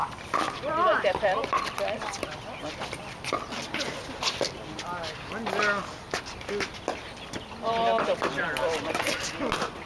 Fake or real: real